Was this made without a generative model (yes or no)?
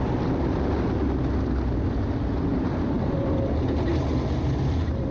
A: yes